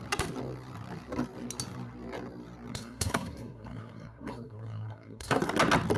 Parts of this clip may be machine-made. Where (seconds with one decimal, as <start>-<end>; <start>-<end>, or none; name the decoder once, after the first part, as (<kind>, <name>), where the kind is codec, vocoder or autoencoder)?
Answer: 2.7-5.4 (codec, SNAC)